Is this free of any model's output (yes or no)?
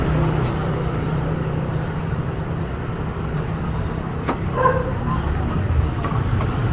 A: no